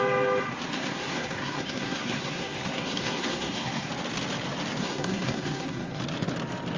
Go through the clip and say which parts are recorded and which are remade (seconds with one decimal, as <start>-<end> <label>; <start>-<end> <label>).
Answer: 0.0-0.7 recorded; 0.7-3.9 remade; 3.9-4.8 recorded; 4.8-6.0 remade; 6.0-6.8 recorded